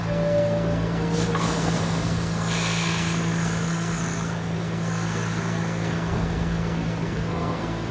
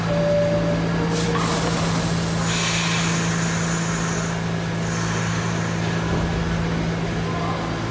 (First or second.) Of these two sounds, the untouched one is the second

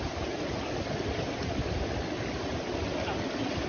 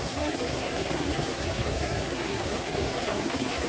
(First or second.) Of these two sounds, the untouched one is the first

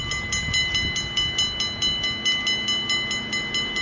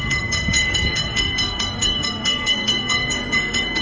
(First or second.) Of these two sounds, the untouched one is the first